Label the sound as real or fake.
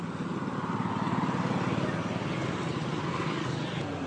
real